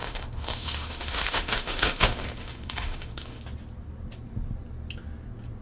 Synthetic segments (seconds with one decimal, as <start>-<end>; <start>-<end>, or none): 0.0-3.4